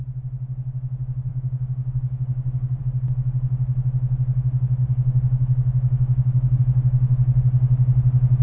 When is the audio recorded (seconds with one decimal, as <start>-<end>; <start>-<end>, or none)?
0.0-1.3; 2.8-4.8; 6.6-8.4